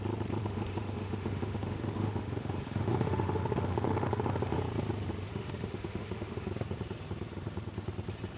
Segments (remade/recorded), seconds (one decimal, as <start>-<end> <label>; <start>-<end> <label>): 0.0-0.4 recorded; 0.4-4.6 remade; 4.6-5.3 recorded; 5.3-6.5 remade; 6.5-8.4 recorded